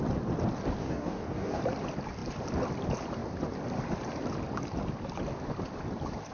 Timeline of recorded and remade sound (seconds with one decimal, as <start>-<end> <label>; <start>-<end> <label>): 0.0-0.8 recorded; 0.8-1.6 remade; 1.6-6.3 recorded